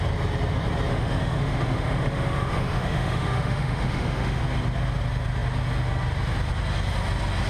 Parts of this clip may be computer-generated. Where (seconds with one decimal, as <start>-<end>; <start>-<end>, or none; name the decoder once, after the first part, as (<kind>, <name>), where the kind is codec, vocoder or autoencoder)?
0.9-4.4 (autoencoder, DAC-VAE)